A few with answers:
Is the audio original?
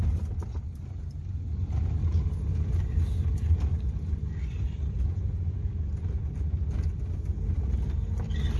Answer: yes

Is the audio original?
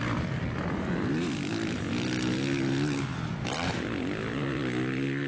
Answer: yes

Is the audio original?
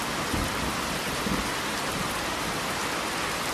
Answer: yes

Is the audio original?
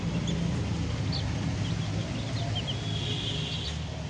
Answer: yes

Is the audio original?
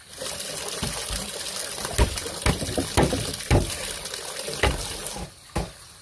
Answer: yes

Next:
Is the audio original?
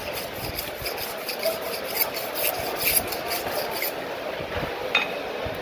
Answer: yes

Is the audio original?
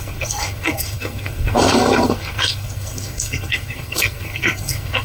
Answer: no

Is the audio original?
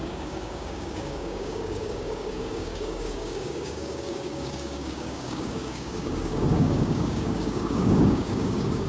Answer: no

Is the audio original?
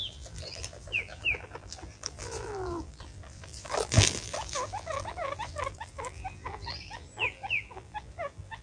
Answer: no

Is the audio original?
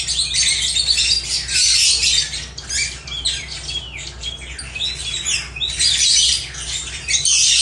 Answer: yes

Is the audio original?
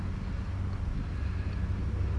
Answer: yes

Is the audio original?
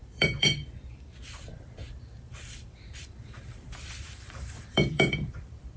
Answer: no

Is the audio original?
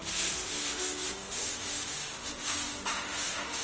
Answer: no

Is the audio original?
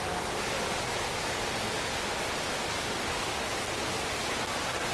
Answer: yes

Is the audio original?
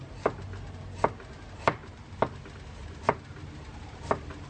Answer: yes